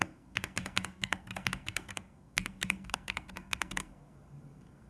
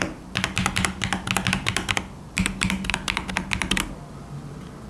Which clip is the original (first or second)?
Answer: second